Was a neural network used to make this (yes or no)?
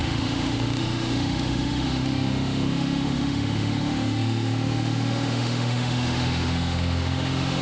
yes